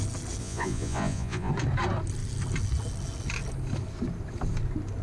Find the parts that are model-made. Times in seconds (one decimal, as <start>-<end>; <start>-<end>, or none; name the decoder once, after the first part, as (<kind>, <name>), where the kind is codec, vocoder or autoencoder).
0.4-1.5 (vocoder, Vocos)